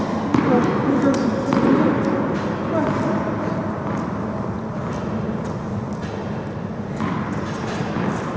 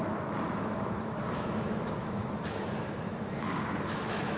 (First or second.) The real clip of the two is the first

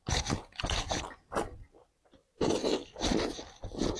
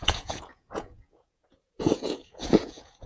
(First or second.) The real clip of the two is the first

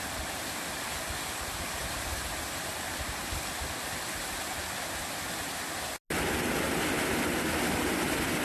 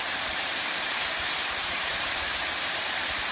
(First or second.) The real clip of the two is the first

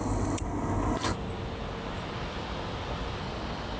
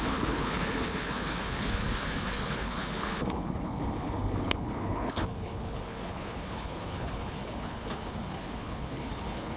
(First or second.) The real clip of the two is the first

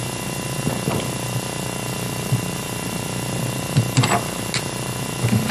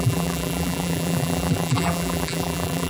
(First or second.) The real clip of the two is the first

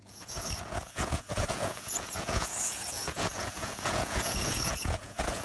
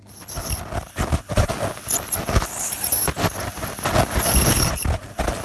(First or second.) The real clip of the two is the second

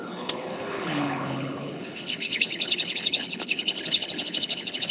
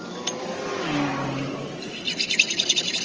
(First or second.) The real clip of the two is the second